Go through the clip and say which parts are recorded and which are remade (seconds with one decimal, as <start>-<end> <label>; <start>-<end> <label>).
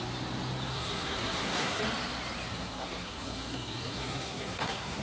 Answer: 0.0-0.7 recorded; 0.7-1.8 remade; 1.8-2.5 recorded; 2.5-5.0 remade